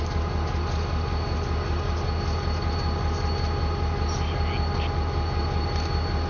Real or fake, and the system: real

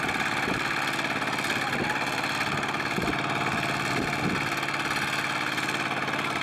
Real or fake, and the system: real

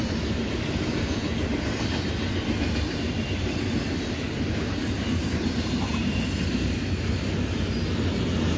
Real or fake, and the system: real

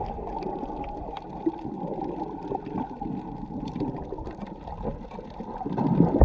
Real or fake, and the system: real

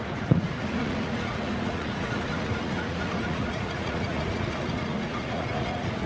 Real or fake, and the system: fake, vocoder, Vocos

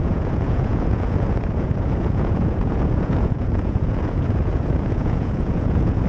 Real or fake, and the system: fake, vocoder, Vocos